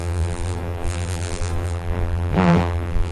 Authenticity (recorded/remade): remade